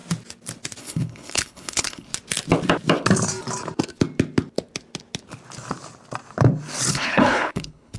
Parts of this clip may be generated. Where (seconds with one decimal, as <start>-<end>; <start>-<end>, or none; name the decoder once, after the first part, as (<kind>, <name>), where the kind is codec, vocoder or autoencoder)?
0.8-2.1 (codec, HILCodec); 6.9-8.0